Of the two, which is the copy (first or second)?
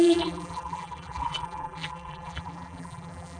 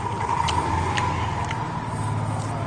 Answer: first